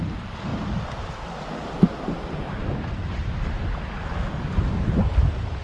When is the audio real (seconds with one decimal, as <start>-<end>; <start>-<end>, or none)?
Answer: 0.0-5.6